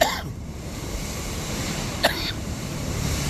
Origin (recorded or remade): remade